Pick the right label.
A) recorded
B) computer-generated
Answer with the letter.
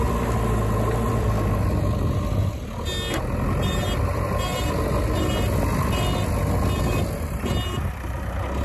A